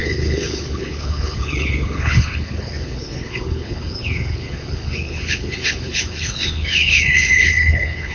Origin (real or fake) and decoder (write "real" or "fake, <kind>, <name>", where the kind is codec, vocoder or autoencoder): fake, codec, HILCodec